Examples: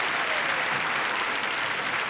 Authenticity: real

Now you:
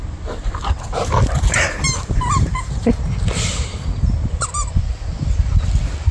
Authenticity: real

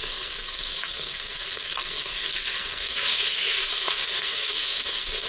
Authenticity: fake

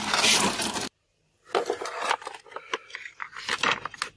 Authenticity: real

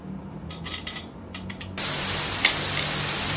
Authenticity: real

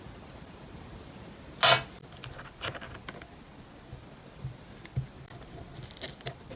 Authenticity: real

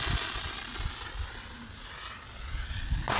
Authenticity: real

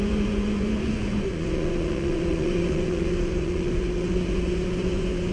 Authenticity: fake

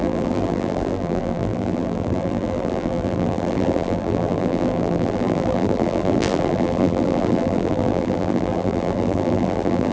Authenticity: fake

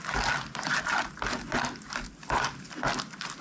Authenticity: real